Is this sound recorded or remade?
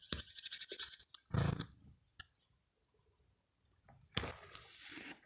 recorded